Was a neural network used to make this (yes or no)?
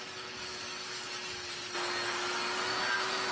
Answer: no